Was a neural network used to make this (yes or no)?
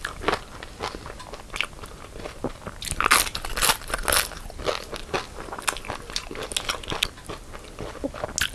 no